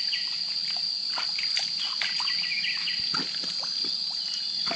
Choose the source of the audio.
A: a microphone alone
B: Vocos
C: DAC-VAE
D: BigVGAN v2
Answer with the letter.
A